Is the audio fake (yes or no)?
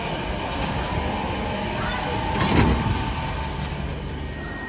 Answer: no